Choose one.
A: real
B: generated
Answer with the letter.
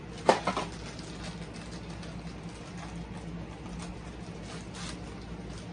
A